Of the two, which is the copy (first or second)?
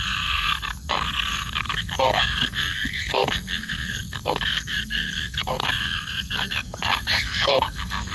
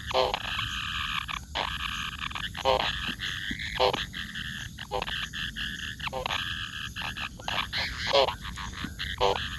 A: first